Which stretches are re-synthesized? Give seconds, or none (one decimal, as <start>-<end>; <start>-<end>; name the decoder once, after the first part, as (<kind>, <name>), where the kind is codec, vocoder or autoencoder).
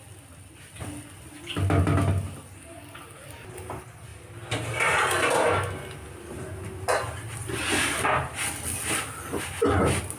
none